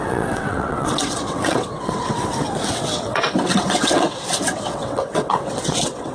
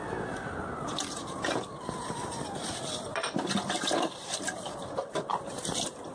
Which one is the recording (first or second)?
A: second